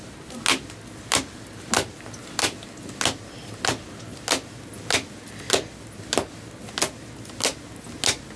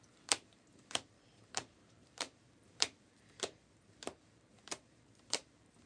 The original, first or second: first